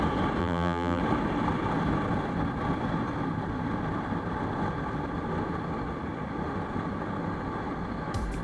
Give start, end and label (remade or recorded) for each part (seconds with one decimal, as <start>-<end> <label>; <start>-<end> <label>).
0.0-0.4 recorded; 0.4-1.0 remade; 1.0-8.4 recorded